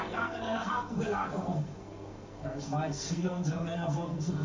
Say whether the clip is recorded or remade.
remade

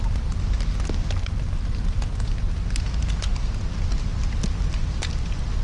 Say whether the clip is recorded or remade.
recorded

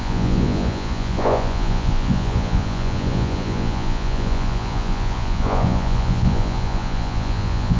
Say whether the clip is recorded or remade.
remade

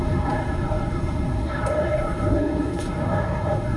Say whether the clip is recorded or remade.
remade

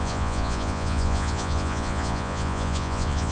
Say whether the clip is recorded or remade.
remade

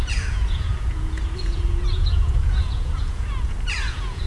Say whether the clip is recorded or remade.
remade